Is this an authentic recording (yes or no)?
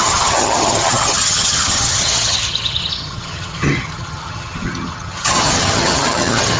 no